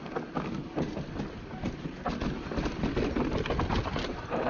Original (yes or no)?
yes